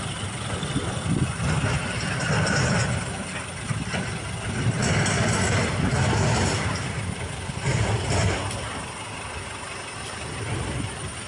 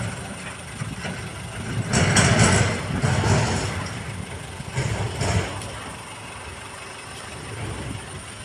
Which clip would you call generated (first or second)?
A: first